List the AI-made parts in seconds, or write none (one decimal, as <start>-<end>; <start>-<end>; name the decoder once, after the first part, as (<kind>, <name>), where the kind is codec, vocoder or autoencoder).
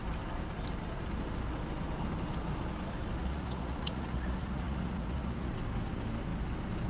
3.2-5.5 (vocoder, Vocos)